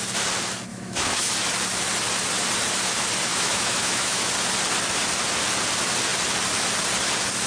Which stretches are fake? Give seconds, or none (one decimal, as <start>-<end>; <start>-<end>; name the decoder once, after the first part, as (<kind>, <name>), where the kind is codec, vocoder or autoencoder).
0.7-1.3 (autoencoder, DAC-VAE); 3.3-4.3